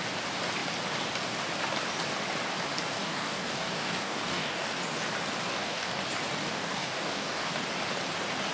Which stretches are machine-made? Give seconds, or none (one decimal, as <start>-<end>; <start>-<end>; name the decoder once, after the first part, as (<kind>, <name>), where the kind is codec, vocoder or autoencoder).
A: 3.0-4.8 (codec, DAC); 5.5-6.0; 6.4-7.5